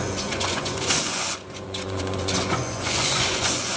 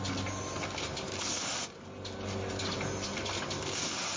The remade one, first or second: first